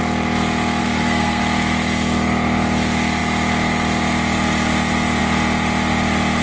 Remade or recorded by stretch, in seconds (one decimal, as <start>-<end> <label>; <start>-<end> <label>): 0.0-0.8 recorded; 0.8-1.4 remade; 1.4-6.4 recorded